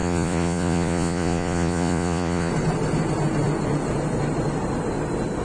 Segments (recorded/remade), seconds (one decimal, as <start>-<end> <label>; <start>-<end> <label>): 0.0-2.5 remade; 2.5-5.4 recorded